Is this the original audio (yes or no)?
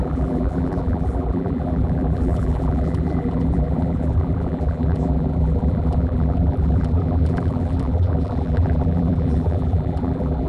no